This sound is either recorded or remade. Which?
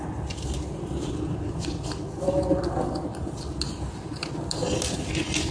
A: recorded